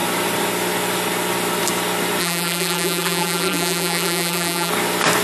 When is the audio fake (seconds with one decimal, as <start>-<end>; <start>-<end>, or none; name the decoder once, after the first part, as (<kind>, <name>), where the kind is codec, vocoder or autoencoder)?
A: 2.2-4.7 (vocoder, BigVGAN v2)

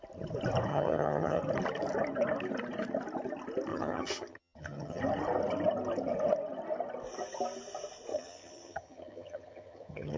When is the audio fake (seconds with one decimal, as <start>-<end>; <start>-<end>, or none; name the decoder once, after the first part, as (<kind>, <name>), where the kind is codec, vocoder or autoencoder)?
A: 0.7-1.4 (vocoder, HiFi-GAN); 3.7-5.0; 8.1-10.2